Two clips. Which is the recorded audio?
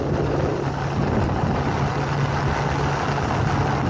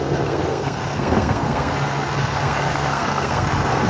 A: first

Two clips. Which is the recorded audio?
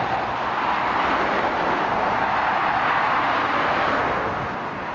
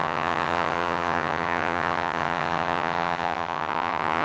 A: first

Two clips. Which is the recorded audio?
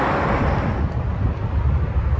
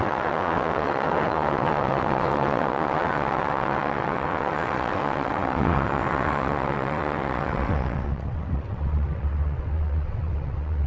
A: first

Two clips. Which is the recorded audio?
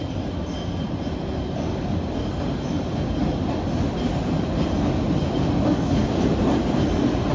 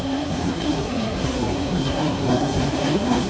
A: first